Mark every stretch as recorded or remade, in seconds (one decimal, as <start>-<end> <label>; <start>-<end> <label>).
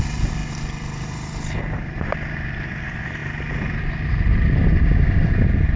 0.0-5.8 recorded